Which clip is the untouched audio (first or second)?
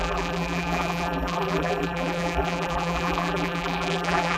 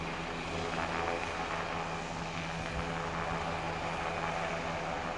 second